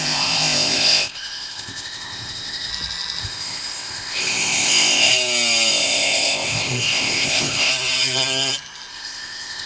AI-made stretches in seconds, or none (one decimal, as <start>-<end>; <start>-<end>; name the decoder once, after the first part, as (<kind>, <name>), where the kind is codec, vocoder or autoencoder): 0.0-2.7 (codec, ZipCodec); 3.2-5.1; 5.7-7.7; 8.9-9.7